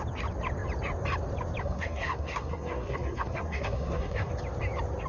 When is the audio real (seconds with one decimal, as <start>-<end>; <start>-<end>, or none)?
0.0-1.6; 4.3-5.1